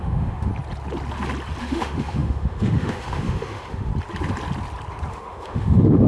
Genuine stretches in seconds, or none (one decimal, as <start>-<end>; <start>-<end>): 0.5-1.6; 3.9-5.1